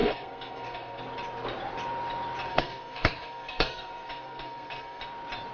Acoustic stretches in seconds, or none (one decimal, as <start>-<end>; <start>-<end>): 1.0-2.5; 5.0-5.5

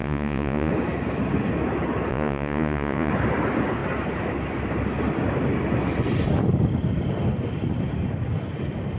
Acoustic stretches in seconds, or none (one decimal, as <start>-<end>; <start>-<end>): 0.7-2.1; 3.1-9.0

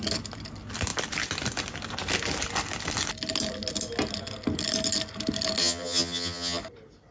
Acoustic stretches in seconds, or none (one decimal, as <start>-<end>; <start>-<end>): 0.0-5.6; 6.6-7.1